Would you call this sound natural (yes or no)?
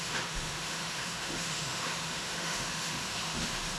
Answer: no